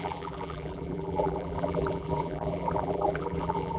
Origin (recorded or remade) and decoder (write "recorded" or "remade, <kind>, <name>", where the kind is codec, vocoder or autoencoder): remade, vocoder, BigVGAN v2